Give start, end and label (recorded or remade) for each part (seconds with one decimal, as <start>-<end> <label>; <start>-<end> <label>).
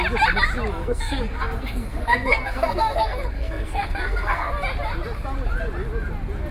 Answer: 0.0-0.8 recorded; 0.8-4.5 remade; 4.5-6.5 recorded